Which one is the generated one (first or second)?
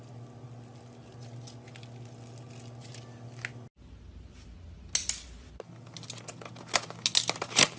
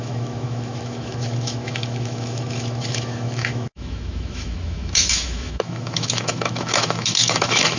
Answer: second